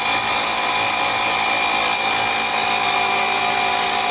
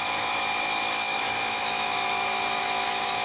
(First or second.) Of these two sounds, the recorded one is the first